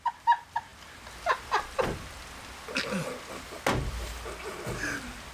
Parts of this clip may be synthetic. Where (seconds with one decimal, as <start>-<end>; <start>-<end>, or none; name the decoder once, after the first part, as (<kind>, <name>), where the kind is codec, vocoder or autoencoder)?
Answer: none